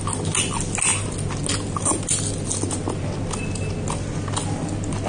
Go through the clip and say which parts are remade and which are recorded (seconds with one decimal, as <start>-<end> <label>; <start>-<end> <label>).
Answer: 0.0-5.1 recorded